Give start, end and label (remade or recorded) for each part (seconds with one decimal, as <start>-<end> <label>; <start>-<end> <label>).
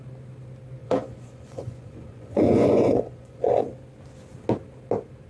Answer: 0.0-0.8 recorded; 0.8-3.6 remade; 3.6-5.3 recorded